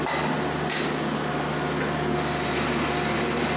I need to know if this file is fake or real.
real